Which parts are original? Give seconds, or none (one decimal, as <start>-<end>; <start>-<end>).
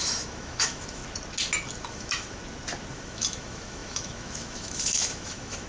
1.0-1.9; 2.4-2.9